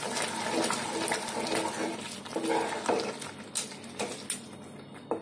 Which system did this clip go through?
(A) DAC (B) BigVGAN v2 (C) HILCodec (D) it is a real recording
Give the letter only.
D